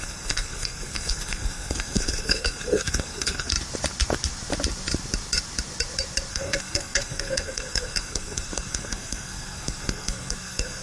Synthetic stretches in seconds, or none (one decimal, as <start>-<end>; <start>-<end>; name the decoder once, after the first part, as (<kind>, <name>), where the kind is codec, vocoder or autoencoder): 0.0-3.5 (codec, SNAC); 6.3-10.8